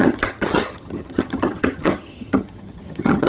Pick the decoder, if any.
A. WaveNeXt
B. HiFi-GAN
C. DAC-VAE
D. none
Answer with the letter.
B